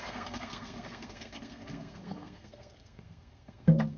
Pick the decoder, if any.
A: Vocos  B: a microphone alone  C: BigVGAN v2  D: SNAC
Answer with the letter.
D